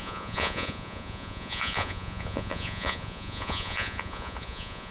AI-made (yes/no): yes